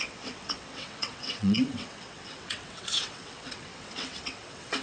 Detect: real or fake fake